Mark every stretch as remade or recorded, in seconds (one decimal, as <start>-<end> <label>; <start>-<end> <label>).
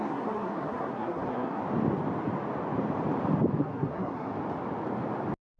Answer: 0.0-1.6 remade; 1.6-3.6 recorded; 3.6-4.3 remade; 4.3-5.6 recorded